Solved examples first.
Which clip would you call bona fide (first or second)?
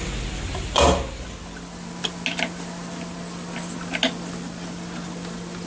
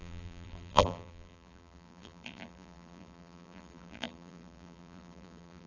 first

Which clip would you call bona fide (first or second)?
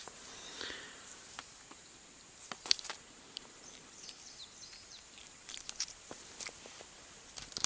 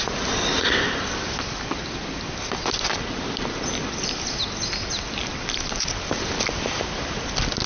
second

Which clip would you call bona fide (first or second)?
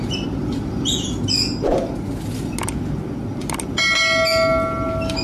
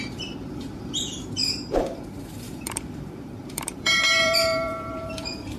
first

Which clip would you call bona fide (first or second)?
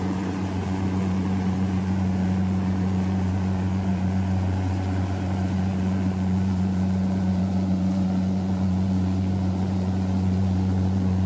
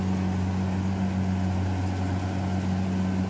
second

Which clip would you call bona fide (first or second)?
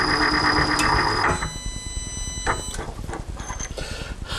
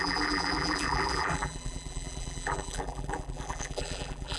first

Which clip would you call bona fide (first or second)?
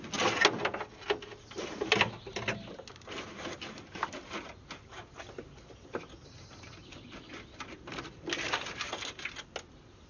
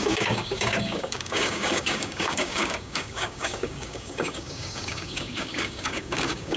first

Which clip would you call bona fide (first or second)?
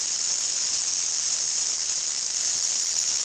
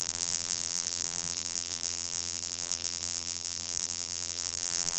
first